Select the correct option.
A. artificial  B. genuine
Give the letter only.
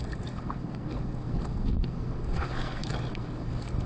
A